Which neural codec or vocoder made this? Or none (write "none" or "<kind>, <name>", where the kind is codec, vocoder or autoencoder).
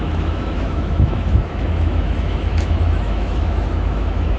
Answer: autoencoder, DAC-VAE